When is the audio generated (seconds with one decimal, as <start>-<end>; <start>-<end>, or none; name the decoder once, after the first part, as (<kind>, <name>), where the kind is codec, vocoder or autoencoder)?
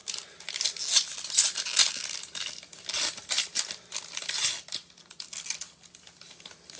none